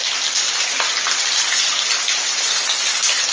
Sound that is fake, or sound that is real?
real